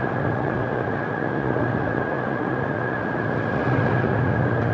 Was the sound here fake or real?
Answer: fake